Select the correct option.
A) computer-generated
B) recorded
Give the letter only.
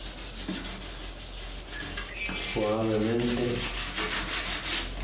B